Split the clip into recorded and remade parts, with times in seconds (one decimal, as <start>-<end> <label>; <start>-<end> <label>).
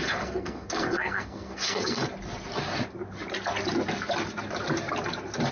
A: 0.0-2.0 remade; 2.0-5.5 recorded